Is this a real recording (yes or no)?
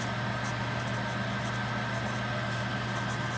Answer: yes